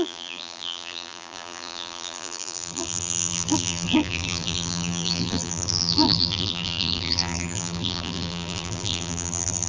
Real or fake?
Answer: fake